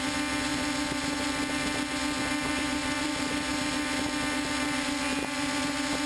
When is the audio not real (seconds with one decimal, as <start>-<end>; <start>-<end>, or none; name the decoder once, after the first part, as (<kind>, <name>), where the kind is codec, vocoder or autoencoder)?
2.5-3.5 (vocoder, BigVGAN v2)